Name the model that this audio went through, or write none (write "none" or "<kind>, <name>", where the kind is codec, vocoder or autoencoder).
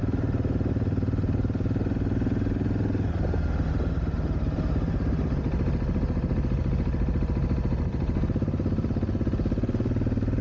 none